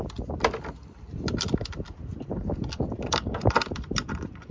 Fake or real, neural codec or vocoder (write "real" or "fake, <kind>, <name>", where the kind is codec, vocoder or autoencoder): real